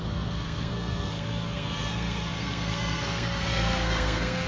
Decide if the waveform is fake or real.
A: fake